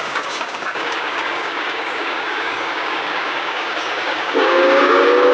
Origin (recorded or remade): remade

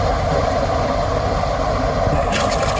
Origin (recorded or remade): recorded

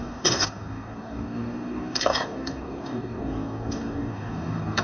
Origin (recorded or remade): remade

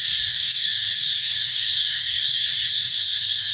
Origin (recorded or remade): remade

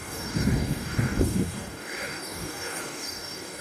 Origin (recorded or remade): remade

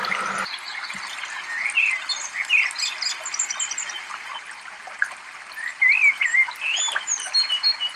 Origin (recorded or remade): recorded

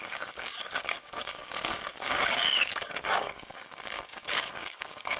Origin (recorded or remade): remade